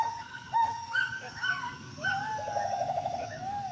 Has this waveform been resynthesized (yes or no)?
yes